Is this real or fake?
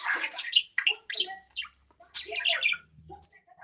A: real